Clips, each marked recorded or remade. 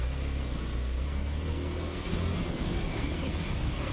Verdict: remade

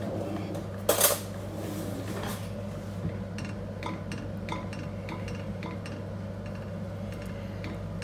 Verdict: recorded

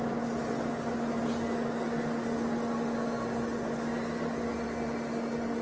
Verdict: recorded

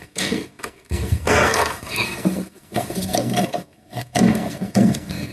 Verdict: remade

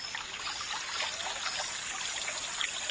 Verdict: recorded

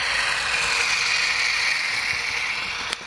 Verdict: recorded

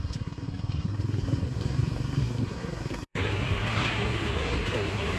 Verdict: remade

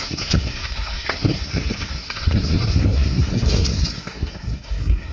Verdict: remade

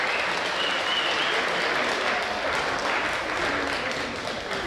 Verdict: recorded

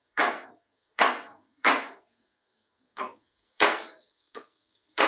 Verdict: remade